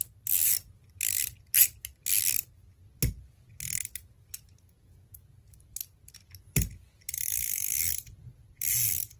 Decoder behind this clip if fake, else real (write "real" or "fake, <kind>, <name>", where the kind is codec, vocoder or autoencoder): real